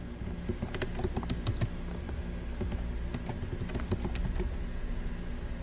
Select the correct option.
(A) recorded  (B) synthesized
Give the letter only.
A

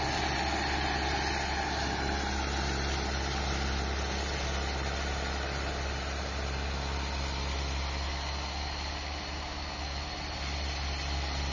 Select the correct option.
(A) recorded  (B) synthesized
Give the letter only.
A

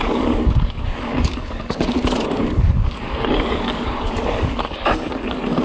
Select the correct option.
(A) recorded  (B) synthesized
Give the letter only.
B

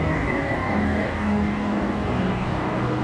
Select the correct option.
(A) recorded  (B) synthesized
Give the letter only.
B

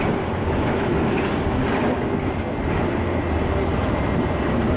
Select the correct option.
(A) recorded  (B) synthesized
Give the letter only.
A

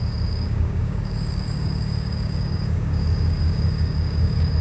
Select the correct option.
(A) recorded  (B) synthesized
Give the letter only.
B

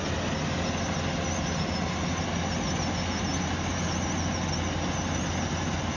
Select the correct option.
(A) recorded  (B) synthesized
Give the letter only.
A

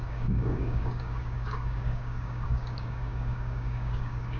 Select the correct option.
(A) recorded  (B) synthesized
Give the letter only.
B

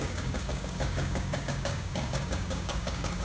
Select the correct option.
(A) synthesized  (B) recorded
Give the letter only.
A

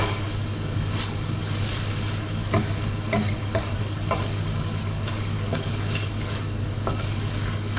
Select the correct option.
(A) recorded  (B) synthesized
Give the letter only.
B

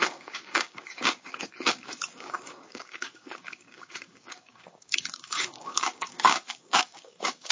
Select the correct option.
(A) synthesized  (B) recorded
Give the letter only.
A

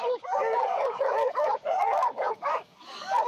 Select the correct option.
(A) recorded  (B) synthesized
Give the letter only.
B